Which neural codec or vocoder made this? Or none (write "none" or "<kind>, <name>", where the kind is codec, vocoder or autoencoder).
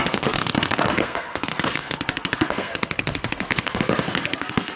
codec, SNAC